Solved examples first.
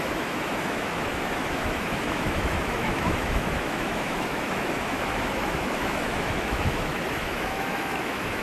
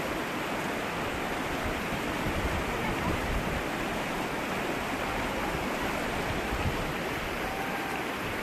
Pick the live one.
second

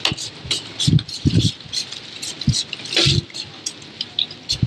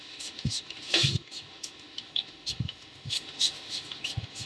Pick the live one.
first